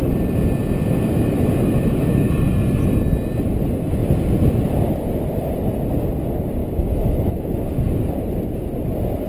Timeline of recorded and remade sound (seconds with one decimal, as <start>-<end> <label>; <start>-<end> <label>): 0.0-1.1 recorded; 1.1-2.3 remade; 2.3-6.6 recorded; 6.6-7.3 remade; 7.3-9.3 recorded